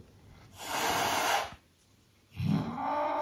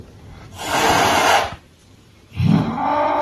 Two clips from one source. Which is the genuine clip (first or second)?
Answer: first